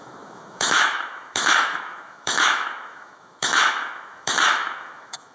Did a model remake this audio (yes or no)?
yes